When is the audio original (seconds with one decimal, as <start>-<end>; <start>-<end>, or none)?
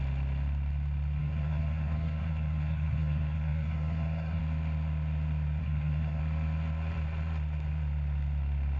0.0-1.2; 4.4-5.6; 6.2-8.8